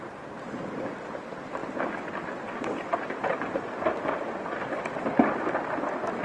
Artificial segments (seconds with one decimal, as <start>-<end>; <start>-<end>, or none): none